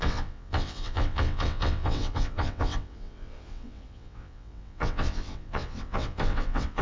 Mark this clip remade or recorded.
remade